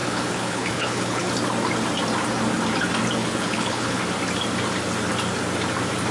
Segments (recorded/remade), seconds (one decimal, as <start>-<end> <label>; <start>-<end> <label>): 0.0-1.3 remade; 1.3-3.2 recorded; 3.2-4.0 remade; 4.0-6.1 recorded